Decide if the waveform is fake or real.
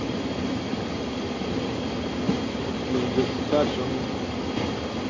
real